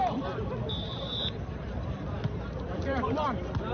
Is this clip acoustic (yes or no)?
no